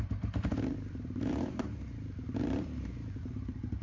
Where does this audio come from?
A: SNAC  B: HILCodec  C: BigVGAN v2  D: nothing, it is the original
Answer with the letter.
C